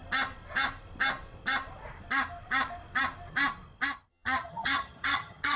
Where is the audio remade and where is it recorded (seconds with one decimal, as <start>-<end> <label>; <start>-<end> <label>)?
0.0-4.1 recorded; 4.1-5.6 remade